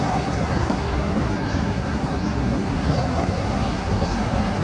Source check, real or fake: fake